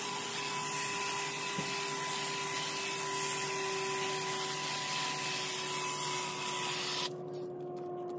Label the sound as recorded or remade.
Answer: recorded